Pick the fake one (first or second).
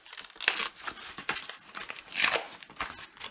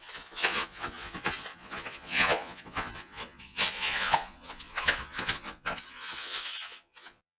second